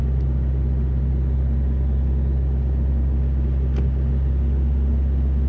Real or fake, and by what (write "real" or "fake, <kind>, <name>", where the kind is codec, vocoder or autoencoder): real